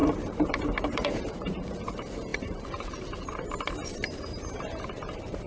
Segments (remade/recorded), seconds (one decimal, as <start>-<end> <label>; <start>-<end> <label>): 0.0-5.5 remade